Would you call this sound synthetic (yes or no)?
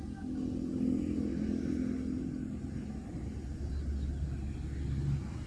no